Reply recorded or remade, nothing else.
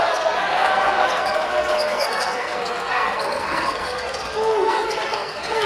remade